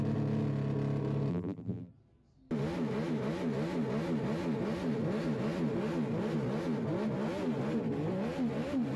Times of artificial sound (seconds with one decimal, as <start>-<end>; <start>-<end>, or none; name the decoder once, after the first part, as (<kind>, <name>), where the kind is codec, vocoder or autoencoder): 1.3-1.9 (vocoder, BigVGAN v2)